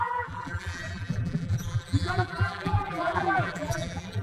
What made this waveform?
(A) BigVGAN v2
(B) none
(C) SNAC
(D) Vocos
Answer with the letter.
A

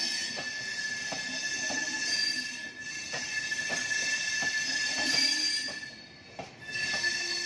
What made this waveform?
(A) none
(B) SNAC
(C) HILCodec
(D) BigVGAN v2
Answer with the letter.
D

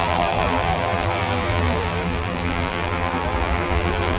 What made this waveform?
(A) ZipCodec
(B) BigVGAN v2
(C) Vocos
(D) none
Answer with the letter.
B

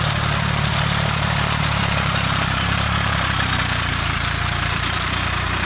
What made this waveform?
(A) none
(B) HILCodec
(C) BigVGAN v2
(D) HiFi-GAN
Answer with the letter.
C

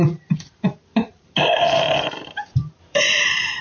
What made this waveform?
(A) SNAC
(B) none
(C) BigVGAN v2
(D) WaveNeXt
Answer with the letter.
C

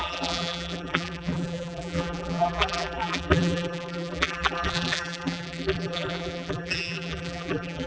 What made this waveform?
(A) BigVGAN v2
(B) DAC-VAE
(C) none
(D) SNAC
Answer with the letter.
A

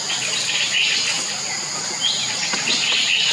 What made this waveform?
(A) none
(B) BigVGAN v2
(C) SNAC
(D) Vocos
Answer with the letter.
A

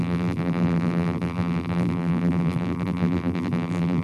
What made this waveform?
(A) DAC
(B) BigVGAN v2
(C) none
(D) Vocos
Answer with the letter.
B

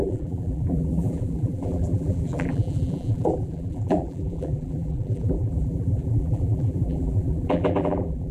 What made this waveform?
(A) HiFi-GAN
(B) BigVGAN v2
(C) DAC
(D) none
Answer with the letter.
B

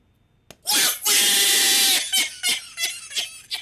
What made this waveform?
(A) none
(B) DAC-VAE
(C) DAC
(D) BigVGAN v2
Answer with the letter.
A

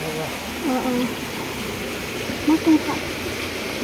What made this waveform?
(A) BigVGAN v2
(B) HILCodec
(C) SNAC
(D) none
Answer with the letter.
D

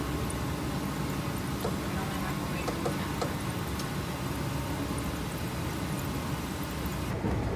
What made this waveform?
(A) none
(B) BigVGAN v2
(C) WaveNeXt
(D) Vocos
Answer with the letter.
A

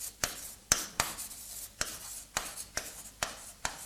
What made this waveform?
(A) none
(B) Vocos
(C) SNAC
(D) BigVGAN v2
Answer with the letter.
D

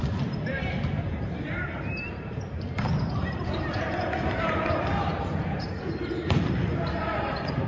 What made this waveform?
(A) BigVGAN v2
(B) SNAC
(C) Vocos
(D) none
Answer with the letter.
A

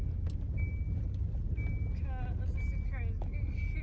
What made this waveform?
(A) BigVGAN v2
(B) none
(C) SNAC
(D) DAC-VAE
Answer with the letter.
B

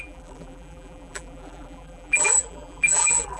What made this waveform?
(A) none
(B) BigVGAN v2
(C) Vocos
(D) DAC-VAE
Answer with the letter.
B